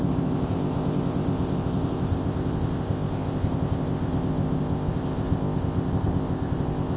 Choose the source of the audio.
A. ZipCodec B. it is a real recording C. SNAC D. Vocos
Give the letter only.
A